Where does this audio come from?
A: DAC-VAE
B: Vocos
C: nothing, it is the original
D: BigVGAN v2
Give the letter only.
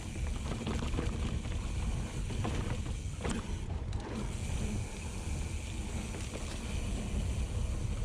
C